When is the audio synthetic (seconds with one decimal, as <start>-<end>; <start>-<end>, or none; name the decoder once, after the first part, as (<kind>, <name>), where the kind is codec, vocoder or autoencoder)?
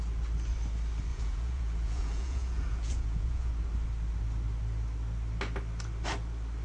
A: 1.1-3.5 (vocoder, Vocos)